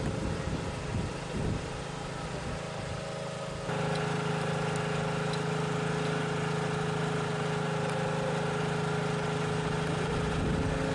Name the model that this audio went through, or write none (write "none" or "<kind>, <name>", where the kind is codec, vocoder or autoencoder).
none